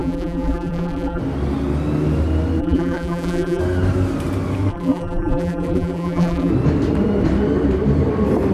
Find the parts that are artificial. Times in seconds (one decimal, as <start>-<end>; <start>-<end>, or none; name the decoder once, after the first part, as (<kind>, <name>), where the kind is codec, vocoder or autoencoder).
0.0-1.2 (vocoder, BigVGAN v2); 2.6-3.6; 4.7-6.5